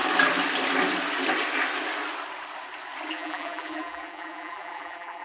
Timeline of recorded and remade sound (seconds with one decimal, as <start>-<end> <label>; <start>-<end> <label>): 0.0-3.1 recorded; 3.1-5.2 remade